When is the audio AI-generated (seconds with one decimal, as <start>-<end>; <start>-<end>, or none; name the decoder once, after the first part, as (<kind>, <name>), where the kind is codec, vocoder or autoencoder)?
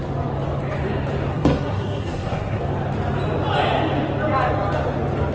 1.3-2.6 (codec, SNAC)